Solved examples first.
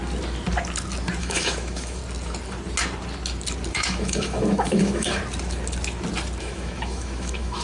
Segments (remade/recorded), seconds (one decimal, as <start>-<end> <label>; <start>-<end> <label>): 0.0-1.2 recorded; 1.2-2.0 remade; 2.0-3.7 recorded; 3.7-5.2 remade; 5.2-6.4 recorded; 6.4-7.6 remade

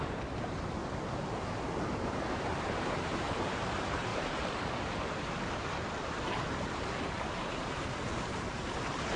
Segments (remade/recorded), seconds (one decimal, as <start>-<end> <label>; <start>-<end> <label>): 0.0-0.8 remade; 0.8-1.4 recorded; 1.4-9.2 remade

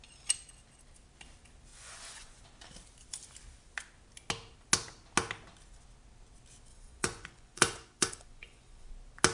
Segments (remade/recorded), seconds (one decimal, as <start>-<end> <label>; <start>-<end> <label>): 0.0-1.7 recorded; 1.7-2.4 remade; 2.4-6.7 recorded; 6.7-8.9 remade; 8.9-9.3 recorded

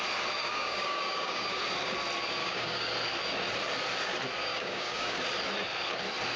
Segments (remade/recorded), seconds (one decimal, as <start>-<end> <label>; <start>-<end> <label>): 0.0-0.4 recorded; 0.4-1.6 remade; 1.6-2.4 recorded; 2.4-2.9 remade; 2.9-4.4 recorded; 4.4-5.2 remade; 5.2-6.4 recorded

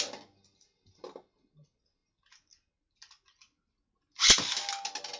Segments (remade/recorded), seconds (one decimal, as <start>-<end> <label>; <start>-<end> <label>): 0.0-5.2 recorded

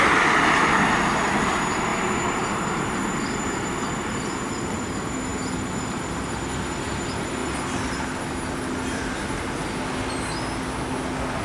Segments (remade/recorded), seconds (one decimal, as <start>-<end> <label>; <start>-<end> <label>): 0.0-1.9 recorded; 1.9-3.0 remade; 3.0-11.4 recorded